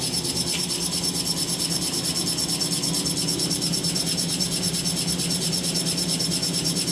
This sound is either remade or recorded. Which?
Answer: recorded